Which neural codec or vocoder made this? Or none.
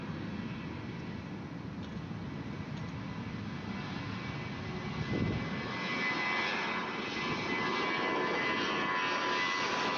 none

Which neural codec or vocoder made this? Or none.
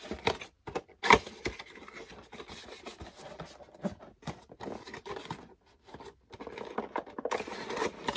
none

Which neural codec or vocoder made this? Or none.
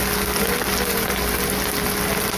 none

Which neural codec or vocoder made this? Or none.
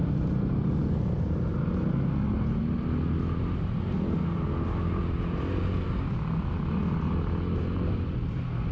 none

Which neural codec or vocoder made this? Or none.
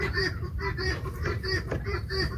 vocoder, BigVGAN v2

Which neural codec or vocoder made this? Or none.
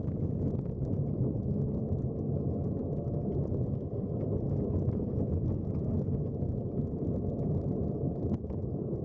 vocoder, BigVGAN v2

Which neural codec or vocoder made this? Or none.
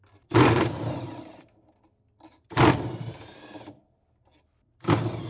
vocoder, BigVGAN v2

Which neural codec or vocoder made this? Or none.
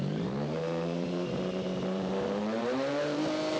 vocoder, BigVGAN v2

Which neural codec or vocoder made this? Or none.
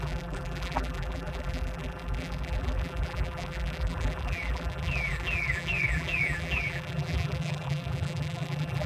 vocoder, BigVGAN v2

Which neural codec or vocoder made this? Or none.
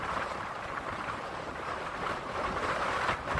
vocoder, BigVGAN v2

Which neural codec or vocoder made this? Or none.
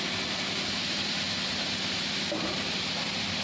vocoder, BigVGAN v2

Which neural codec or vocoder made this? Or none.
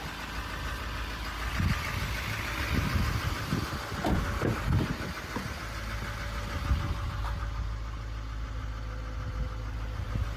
none